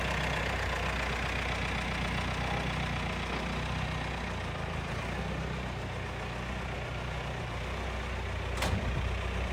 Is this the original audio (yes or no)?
yes